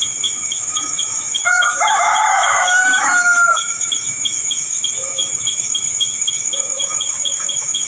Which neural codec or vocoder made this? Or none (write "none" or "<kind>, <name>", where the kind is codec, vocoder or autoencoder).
autoencoder, DAC-VAE